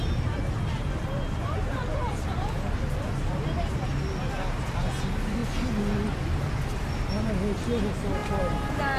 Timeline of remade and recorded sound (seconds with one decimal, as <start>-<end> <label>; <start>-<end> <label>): 0.0-9.0 recorded